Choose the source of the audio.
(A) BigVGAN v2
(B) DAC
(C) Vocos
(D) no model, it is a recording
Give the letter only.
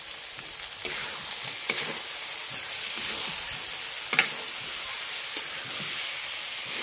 D